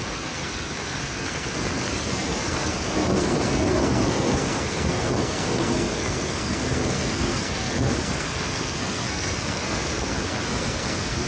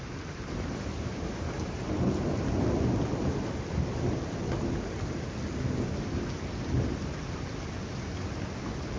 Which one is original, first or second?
second